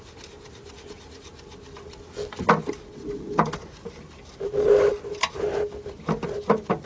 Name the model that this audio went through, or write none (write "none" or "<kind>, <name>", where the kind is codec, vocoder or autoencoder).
none